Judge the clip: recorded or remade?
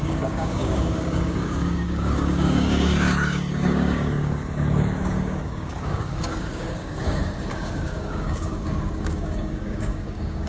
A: remade